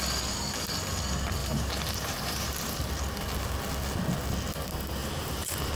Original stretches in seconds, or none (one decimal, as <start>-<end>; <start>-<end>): 0.0-1.4; 2.9-5.0